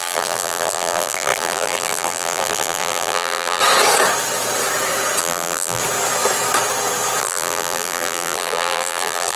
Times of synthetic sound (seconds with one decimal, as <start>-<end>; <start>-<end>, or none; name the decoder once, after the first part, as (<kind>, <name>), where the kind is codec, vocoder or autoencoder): 0.0-3.6 (vocoder, BigVGAN v2); 5.2-5.8; 7.2-9.4